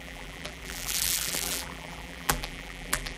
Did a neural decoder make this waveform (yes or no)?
yes